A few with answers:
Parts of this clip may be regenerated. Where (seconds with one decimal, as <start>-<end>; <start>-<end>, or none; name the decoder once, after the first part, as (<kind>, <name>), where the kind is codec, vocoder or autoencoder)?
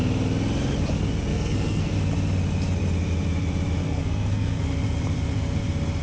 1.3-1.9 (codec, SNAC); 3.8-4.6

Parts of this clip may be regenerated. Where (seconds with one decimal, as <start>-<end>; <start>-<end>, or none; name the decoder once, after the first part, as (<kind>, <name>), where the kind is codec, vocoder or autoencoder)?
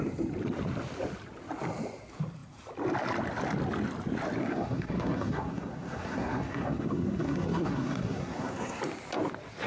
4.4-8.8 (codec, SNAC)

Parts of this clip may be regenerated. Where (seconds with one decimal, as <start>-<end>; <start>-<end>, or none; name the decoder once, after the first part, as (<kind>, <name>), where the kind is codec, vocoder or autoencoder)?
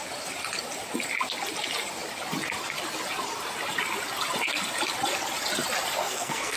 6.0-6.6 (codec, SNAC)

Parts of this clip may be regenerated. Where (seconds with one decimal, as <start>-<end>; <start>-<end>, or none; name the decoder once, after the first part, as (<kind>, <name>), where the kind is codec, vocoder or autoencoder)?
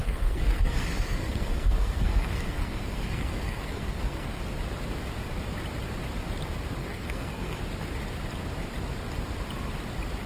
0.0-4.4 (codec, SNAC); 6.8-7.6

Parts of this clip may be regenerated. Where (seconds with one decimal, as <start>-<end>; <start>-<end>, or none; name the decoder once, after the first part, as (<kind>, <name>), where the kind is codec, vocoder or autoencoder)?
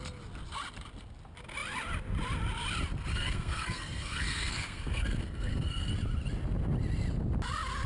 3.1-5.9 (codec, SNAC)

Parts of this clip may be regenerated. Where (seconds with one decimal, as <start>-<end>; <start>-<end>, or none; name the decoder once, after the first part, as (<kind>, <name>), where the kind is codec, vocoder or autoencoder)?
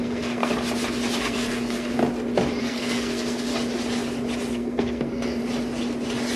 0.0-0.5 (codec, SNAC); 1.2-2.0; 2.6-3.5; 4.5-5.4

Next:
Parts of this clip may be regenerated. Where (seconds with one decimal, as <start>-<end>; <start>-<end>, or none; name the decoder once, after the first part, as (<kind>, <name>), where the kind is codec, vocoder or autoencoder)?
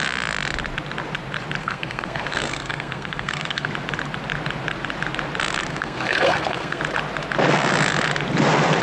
1.6-3.7 (codec, SNAC); 5.7-6.8